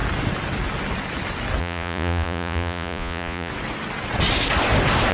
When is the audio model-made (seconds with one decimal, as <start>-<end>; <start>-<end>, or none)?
1.6-3.5